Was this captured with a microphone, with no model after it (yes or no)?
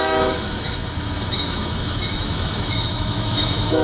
no